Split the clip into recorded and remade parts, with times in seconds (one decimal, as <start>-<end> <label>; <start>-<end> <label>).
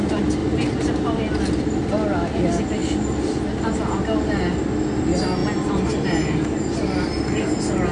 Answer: 0.0-7.9 recorded